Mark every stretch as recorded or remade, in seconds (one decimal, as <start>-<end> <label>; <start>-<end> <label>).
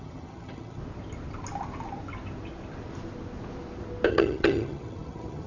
0.0-0.8 remade; 0.8-4.1 recorded; 4.1-5.5 remade